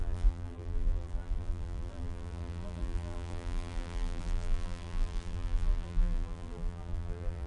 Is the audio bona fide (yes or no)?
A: no